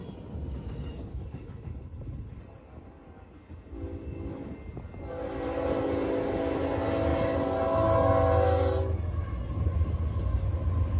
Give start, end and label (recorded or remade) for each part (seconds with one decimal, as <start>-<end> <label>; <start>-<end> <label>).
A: 0.0-1.1 recorded; 1.1-2.4 remade; 2.4-11.0 recorded